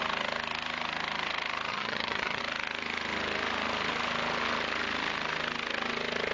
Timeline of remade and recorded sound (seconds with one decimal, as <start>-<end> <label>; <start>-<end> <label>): 0.0-1.7 recorded; 1.7-2.4 remade; 2.4-6.3 recorded

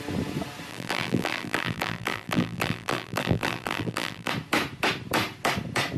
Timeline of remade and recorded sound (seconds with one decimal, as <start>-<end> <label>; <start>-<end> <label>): 0.0-0.7 recorded; 0.7-4.3 remade; 4.3-6.0 recorded

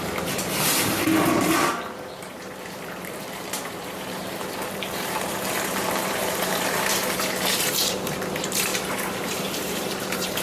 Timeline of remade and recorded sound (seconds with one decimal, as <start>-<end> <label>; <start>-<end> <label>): 0.0-7.0 remade; 7.0-7.7 recorded; 7.7-8.7 remade; 8.7-9.2 recorded; 9.2-10.4 remade

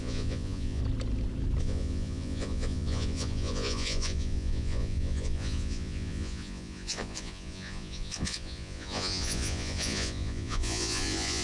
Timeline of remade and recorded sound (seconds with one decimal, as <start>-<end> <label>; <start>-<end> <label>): 0.0-0.8 remade; 0.8-1.6 recorded; 1.6-11.4 remade

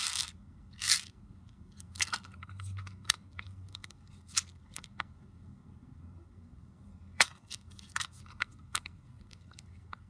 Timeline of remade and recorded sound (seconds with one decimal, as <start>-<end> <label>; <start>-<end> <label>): 0.0-10.1 remade

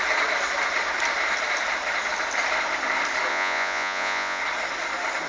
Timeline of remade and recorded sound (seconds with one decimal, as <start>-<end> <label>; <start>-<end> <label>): 0.0-3.3 recorded; 3.3-4.4 remade; 4.4-5.3 recorded

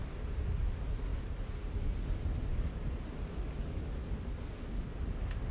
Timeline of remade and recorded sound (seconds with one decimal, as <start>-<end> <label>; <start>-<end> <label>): 0.0-5.5 recorded

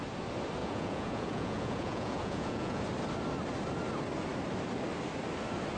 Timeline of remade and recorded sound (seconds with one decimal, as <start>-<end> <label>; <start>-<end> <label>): 0.0-0.6 recorded; 0.6-2.8 remade; 2.8-5.8 recorded